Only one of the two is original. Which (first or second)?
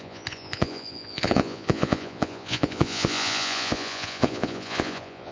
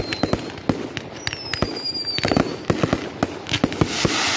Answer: second